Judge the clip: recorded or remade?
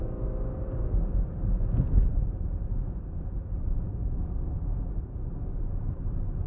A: recorded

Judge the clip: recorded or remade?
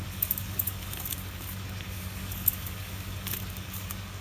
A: remade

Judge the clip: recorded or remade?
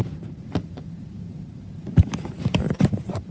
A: remade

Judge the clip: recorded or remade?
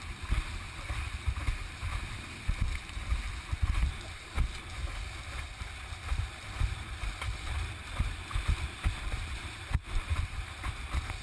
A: recorded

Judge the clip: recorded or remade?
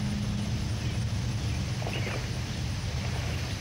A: recorded